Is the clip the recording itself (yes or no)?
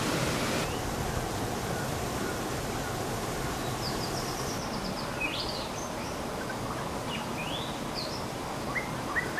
yes